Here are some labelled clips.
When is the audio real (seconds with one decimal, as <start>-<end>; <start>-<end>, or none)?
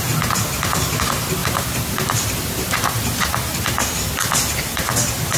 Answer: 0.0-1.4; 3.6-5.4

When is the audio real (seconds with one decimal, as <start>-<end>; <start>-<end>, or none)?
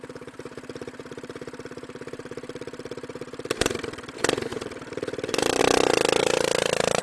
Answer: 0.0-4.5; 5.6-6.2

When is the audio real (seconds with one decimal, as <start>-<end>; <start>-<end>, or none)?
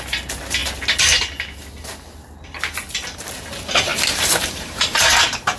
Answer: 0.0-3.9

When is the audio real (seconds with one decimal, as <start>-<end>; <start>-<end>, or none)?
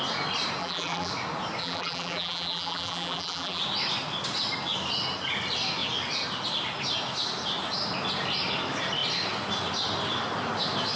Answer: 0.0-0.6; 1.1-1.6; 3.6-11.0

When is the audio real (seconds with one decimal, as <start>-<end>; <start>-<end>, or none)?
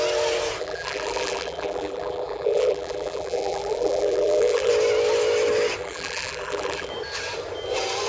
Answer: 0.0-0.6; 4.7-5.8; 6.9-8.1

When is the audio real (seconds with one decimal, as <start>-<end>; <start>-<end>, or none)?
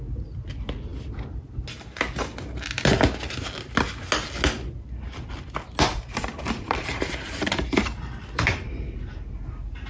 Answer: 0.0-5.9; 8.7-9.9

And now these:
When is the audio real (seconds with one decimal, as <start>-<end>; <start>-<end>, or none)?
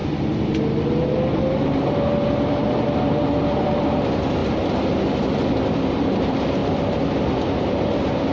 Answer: 0.0-1.5; 4.4-5.9; 6.6-7.8